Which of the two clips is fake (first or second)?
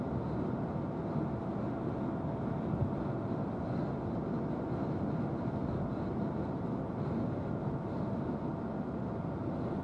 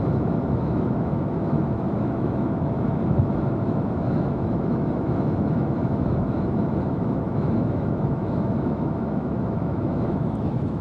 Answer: second